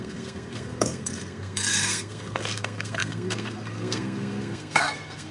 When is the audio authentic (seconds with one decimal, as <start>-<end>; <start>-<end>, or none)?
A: none